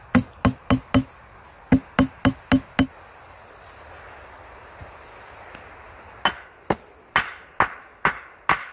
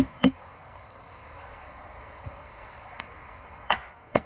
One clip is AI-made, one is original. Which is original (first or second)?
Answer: first